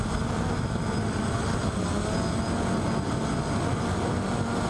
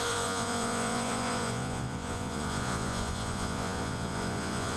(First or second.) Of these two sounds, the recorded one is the first